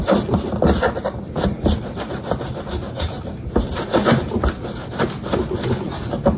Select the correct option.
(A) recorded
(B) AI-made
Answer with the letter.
A